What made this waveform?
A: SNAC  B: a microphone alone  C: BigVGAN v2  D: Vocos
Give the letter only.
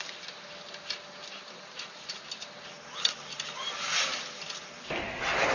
B